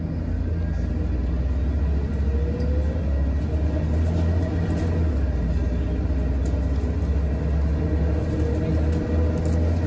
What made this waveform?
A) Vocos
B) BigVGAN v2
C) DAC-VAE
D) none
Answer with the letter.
D